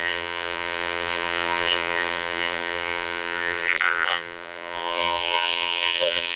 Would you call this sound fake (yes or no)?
yes